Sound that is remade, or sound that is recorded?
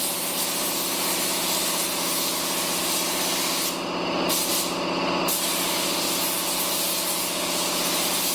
recorded